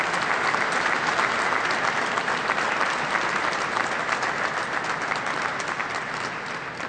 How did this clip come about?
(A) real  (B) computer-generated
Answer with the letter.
A